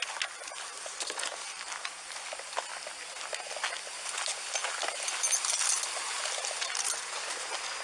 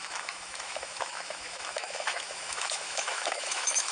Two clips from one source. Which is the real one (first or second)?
first